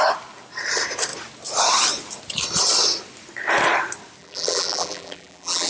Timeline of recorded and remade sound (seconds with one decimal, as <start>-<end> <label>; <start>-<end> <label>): 0.0-4.2 recorded; 4.2-5.7 remade